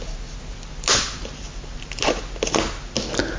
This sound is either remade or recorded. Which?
recorded